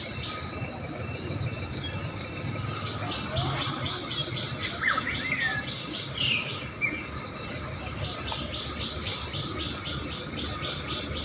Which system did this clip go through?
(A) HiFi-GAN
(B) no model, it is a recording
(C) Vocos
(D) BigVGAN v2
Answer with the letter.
B